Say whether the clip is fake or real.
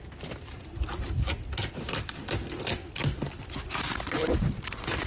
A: real